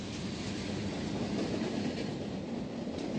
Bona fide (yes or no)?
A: yes